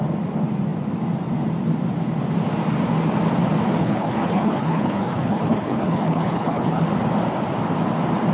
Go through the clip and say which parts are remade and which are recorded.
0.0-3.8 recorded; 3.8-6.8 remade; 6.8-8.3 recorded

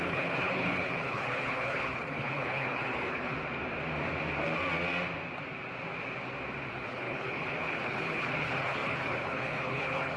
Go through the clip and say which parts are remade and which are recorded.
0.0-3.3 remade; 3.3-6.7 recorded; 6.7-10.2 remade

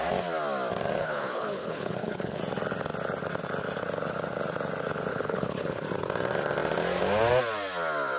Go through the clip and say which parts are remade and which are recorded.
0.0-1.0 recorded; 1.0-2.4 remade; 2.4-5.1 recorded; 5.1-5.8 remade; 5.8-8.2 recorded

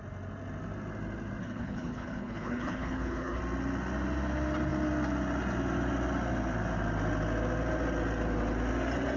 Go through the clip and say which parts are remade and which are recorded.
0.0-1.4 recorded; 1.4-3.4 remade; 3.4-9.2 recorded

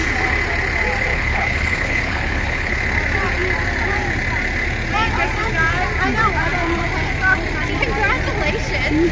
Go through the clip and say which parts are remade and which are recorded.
0.0-1.1 recorded; 1.1-2.8 remade; 2.8-9.1 recorded

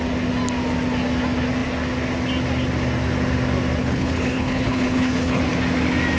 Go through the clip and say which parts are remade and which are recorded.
0.0-3.8 recorded; 3.8-5.4 remade; 5.4-6.2 recorded

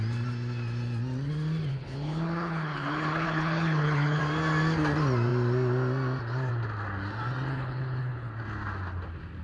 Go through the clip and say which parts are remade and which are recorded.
0.0-1.7 recorded; 1.7-4.2 remade; 4.2-7.5 recorded; 7.5-8.3 remade; 8.3-9.4 recorded